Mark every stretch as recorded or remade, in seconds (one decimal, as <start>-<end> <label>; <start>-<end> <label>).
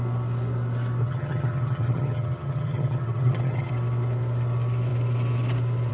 0.0-1.0 recorded; 1.0-3.7 remade; 3.7-5.9 recorded